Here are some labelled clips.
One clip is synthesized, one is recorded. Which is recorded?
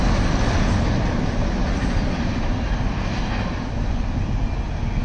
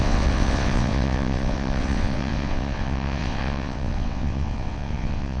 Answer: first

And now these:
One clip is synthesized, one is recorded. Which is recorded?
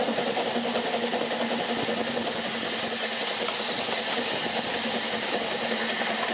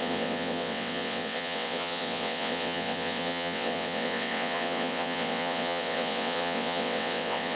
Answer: first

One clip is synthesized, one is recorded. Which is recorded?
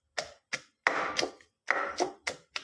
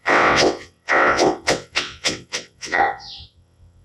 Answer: first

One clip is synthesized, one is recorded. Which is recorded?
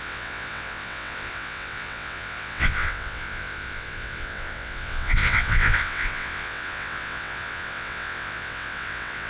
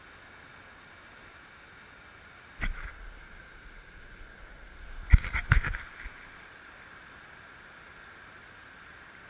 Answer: second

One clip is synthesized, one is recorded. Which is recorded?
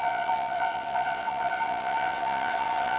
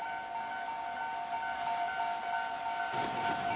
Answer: second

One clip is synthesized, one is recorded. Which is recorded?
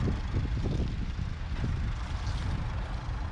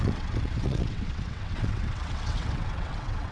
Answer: first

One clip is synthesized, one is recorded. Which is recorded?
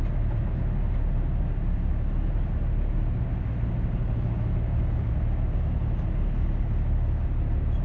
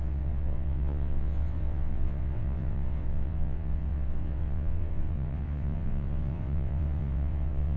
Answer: first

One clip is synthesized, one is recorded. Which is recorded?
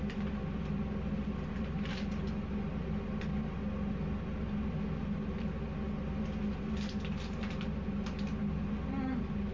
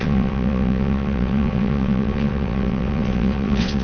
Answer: first